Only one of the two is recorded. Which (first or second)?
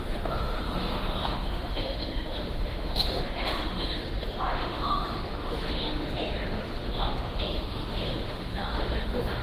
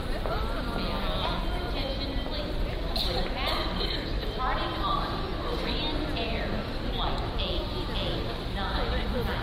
second